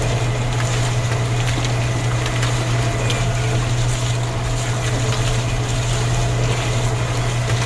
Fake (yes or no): no